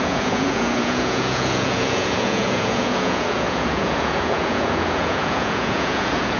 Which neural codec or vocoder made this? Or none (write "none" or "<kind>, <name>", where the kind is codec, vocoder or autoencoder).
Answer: vocoder, Vocos